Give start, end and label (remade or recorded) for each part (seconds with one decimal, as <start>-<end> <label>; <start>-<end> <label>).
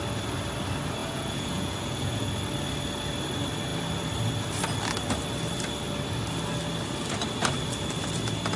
0.0-1.0 recorded; 1.0-2.3 remade; 2.3-8.6 recorded